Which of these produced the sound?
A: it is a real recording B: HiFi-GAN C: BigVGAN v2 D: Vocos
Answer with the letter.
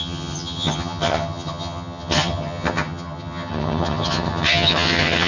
B